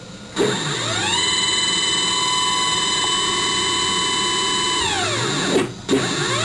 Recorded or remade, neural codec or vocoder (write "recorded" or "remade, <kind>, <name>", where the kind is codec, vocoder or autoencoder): recorded